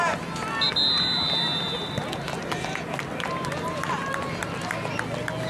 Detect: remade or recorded recorded